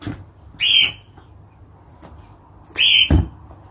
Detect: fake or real real